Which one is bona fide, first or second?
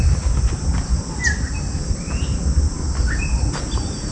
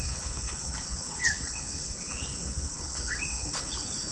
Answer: first